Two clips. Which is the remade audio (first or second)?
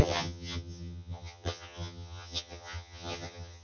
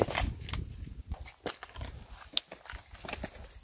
first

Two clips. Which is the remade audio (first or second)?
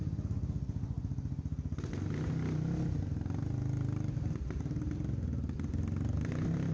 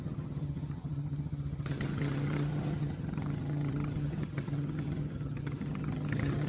second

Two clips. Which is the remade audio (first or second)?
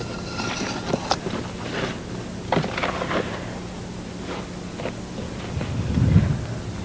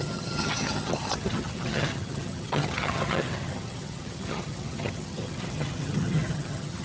second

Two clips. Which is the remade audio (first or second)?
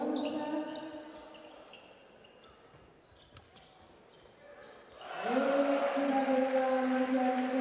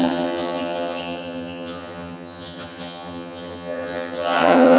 second